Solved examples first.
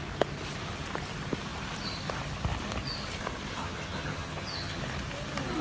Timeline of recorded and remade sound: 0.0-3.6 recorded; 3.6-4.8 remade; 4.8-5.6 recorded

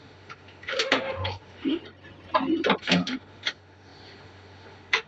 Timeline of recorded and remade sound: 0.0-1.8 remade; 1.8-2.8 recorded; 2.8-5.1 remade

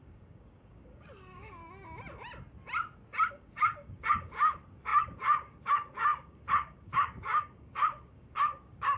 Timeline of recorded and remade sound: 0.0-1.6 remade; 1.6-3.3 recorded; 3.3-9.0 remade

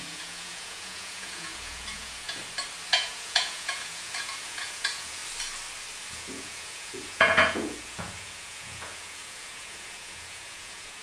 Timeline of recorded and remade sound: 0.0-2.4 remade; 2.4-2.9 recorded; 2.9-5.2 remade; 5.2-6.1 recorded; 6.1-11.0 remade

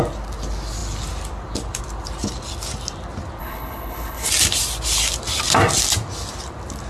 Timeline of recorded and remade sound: 0.0-3.4 recorded; 3.4-4.3 remade; 4.3-6.9 recorded

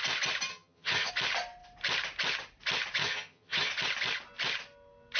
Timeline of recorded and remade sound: 0.0-0.5 recorded; 0.5-1.1 remade; 1.1-3.0 recorded; 3.0-3.7 remade; 3.7-5.2 recorded

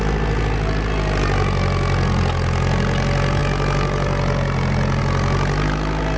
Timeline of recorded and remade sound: 0.0-6.2 recorded

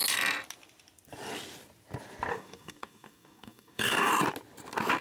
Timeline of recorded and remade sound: 0.0-2.3 recorded; 2.3-4.1 remade; 4.1-5.0 recorded